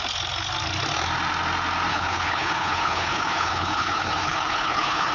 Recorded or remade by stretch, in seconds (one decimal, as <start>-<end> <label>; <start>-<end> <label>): 0.0-1.9 recorded; 1.9-5.1 remade